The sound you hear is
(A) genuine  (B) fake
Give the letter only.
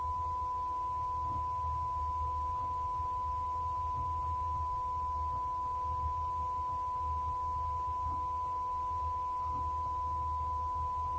A